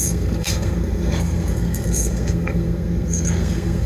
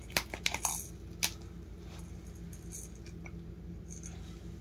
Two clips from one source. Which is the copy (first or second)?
first